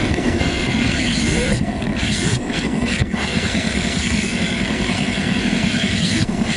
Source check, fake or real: fake